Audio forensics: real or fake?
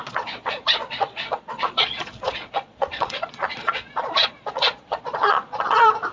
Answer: fake